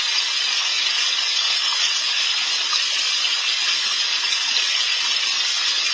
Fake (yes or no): no